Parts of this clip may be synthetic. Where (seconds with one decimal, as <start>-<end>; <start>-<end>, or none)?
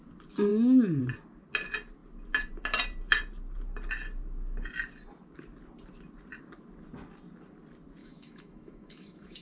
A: 8.0-9.4